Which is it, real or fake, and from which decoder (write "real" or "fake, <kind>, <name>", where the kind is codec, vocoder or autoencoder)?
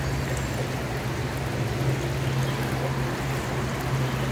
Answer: real